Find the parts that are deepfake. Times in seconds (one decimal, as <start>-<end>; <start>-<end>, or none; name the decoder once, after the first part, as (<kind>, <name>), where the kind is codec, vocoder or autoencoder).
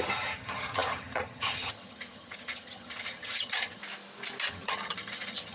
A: 0.0-3.8 (vocoder, HiFi-GAN); 4.5-5.5